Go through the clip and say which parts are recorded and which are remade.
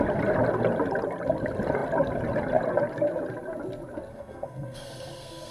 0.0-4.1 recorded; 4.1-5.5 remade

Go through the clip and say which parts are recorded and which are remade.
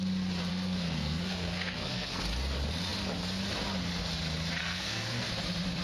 0.0-0.5 recorded; 0.5-2.2 remade; 2.2-4.6 recorded; 4.6-5.3 remade; 5.3-5.8 recorded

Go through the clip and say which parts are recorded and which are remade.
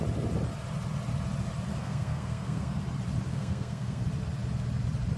0.0-1.7 recorded; 1.7-2.8 remade; 2.8-3.3 recorded; 3.3-4.0 remade; 4.0-5.2 recorded